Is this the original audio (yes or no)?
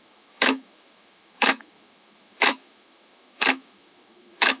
no